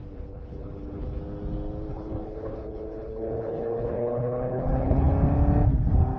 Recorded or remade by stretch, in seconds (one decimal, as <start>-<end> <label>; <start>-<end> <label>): 0.0-1.2 remade; 1.2-1.9 recorded; 1.9-5.1 remade; 5.1-6.2 recorded